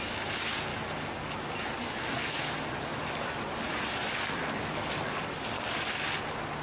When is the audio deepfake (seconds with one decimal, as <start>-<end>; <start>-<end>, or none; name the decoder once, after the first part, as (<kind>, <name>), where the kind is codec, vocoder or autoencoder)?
none

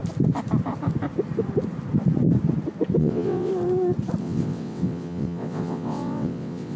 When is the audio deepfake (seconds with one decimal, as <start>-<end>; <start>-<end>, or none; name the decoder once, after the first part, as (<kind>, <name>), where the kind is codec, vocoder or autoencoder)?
3.0-3.5 (vocoder, WaveNeXt); 4.2-6.8

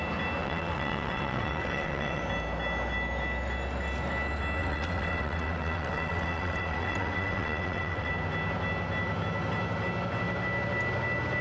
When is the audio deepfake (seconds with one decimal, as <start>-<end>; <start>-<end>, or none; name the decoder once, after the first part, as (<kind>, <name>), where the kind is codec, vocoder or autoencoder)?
0.4-2.2 (vocoder, WaveNeXt); 4.6-8.1

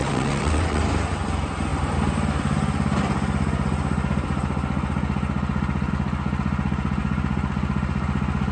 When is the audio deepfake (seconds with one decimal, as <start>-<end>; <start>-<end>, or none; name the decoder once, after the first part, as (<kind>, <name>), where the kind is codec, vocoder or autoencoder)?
0.0-0.8 (vocoder, WaveNeXt)

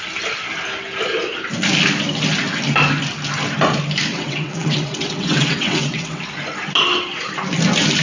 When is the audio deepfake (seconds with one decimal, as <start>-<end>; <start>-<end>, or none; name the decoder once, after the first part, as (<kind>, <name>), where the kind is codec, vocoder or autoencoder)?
4.1-6.2 (vocoder, WaveNeXt)

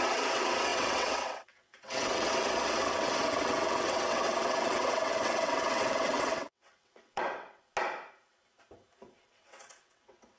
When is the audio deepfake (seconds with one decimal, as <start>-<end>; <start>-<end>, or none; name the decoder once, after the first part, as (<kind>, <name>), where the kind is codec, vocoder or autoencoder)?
0.0-7.6 (vocoder, WaveNeXt); 9.3-10.4